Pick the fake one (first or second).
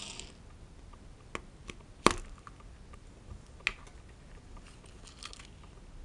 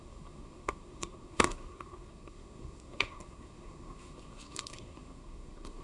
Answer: second